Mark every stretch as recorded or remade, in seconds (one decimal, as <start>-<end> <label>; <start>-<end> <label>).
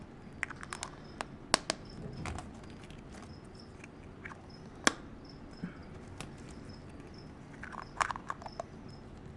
0.0-9.4 recorded